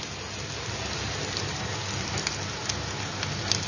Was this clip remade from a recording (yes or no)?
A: no